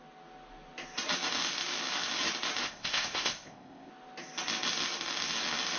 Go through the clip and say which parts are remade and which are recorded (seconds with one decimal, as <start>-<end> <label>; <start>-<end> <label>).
0.0-2.6 recorded; 2.6-3.9 remade; 3.9-5.8 recorded